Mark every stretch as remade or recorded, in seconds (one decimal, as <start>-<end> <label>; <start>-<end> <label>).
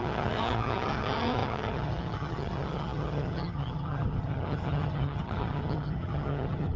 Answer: 0.0-6.8 remade